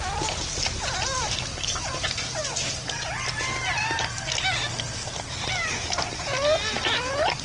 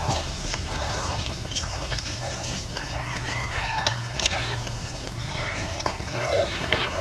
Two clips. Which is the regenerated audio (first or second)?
second